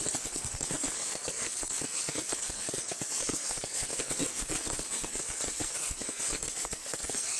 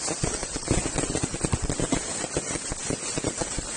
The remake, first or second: first